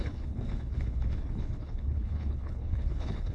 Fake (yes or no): yes